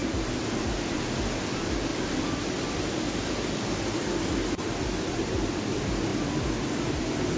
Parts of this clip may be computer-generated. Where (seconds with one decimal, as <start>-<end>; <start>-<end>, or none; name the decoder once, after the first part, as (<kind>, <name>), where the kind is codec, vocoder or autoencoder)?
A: none